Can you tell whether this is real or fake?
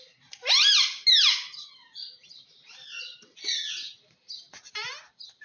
real